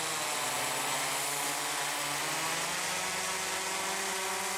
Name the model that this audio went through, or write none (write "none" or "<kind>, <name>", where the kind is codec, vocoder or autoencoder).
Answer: none